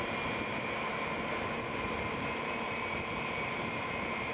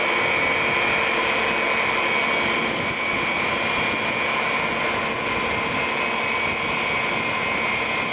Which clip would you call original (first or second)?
second